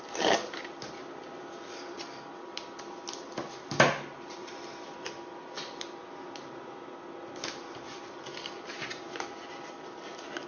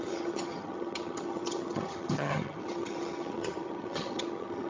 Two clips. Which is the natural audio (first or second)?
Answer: first